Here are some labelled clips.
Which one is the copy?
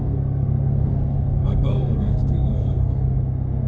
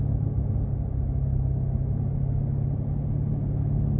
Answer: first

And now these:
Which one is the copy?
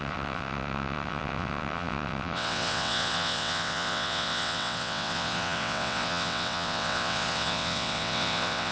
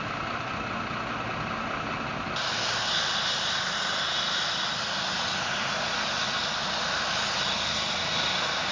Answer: first